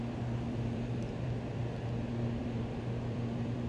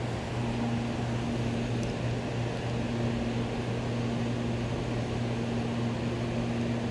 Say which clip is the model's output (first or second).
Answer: first